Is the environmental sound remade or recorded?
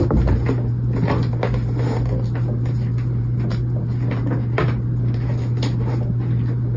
recorded